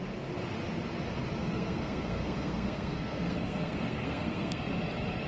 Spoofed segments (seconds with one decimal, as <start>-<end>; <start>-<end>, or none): 1.4-4.6